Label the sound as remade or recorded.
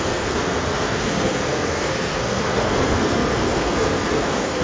remade